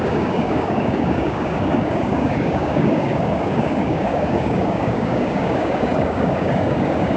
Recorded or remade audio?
remade